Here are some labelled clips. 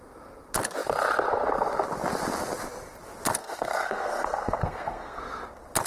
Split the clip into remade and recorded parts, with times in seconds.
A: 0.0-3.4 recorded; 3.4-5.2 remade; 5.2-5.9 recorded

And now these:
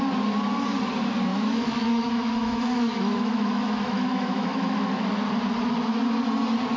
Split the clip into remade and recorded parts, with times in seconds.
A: 0.0-1.3 recorded; 1.3-5.1 remade; 5.1-6.8 recorded

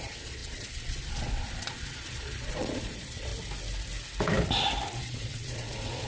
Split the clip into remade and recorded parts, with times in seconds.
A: 0.0-3.3 remade; 3.3-5.0 recorded; 5.0-6.1 remade

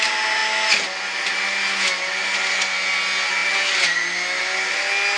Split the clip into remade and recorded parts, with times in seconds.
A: 0.0-5.2 recorded

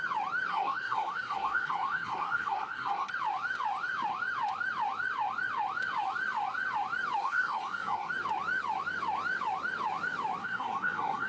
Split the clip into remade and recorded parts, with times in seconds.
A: 0.0-0.5 recorded; 0.5-3.1 remade; 3.1-7.2 recorded; 7.2-8.1 remade; 8.1-10.4 recorded; 10.4-11.3 remade

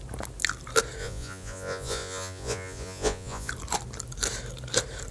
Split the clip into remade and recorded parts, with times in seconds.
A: 0.0-1.0 recorded; 1.0-3.5 remade; 3.5-5.1 recorded

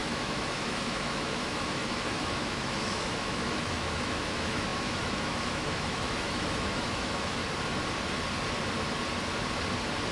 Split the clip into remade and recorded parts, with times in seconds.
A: 0.0-7.4 remade; 7.4-10.1 recorded

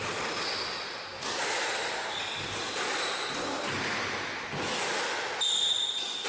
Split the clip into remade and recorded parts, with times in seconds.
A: 0.0-6.3 recorded